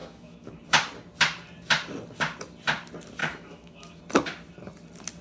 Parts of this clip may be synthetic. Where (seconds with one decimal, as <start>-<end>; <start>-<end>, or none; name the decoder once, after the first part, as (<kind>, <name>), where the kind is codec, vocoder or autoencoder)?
0.0-0.6 (autoencoder, DAC-VAE); 3.2-4.0